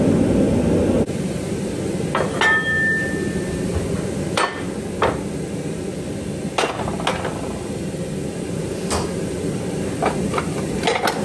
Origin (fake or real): real